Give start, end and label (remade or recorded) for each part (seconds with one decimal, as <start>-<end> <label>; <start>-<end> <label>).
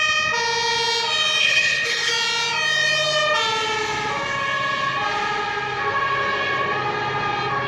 0.0-1.4 recorded; 1.4-2.1 remade; 2.1-7.7 recorded